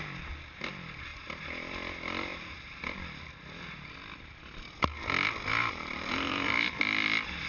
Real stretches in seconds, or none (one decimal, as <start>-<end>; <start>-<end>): 0.0-5.6; 6.8-7.5